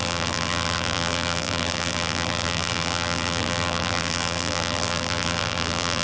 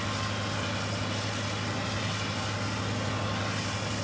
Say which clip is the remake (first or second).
first